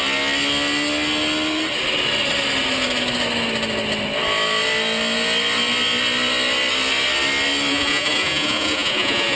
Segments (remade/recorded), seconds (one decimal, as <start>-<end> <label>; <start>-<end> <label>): 0.0-7.7 recorded; 7.7-9.4 remade